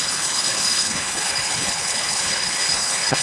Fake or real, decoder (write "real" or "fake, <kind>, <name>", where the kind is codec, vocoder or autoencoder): fake, codec, HILCodec